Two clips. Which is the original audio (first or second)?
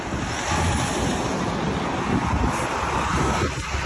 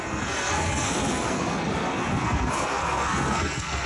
first